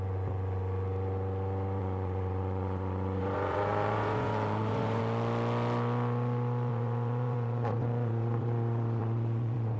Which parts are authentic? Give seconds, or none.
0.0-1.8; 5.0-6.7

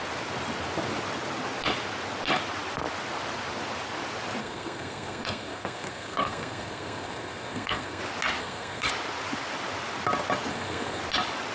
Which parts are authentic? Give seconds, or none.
0.0-4.4; 8.0-8.4; 8.9-10.5; 11.0-11.5

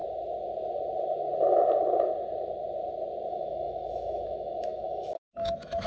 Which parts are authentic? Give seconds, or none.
0.0-3.3

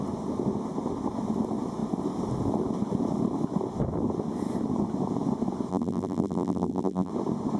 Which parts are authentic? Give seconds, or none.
0.0-5.7; 7.1-7.6